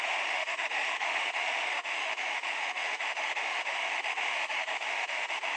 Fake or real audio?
fake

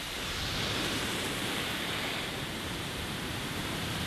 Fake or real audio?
fake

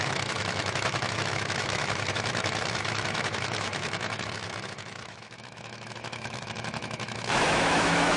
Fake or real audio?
fake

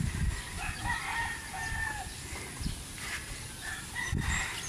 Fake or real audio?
real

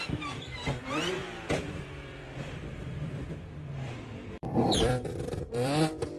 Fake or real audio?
fake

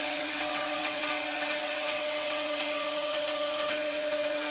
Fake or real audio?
fake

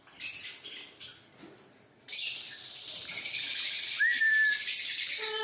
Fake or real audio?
real